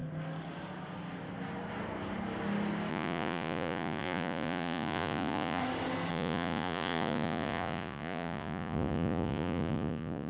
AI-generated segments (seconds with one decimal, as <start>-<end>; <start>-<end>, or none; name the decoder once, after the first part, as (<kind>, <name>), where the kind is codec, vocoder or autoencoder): 2.9-5.6 (vocoder, Vocos); 6.1-10.3